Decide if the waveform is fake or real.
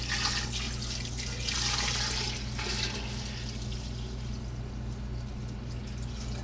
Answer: real